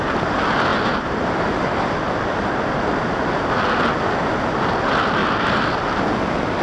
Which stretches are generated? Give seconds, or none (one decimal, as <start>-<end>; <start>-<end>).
0.0-0.7; 4.7-5.2